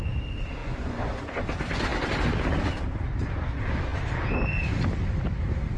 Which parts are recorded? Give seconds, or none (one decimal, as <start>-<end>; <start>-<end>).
0.0-0.6; 1.4-5.8